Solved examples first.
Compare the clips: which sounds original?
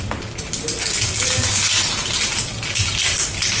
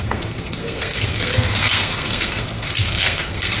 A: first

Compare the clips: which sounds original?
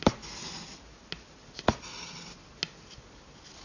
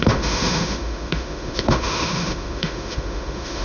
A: first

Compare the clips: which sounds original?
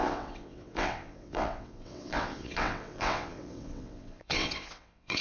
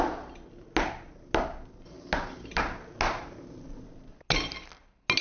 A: second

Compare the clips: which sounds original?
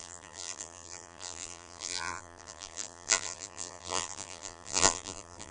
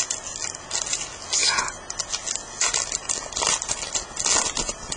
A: second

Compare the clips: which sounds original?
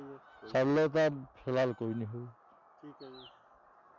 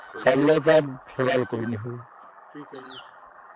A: first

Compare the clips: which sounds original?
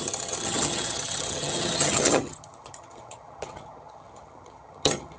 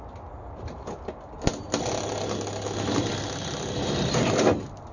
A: second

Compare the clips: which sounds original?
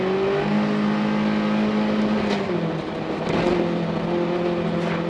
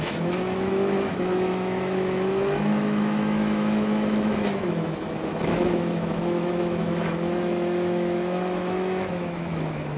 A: first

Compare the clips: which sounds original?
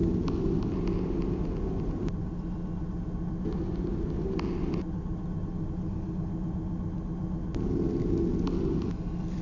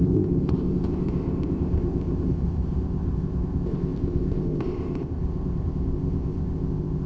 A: first